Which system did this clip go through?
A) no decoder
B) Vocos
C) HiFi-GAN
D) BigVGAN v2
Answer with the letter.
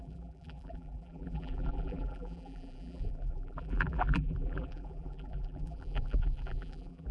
D